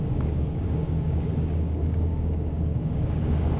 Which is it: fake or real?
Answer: fake